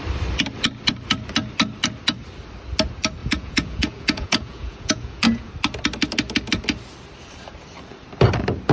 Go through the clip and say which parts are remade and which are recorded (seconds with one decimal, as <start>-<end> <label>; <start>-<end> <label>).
0.0-3.2 recorded; 3.2-5.5 remade; 5.5-8.7 recorded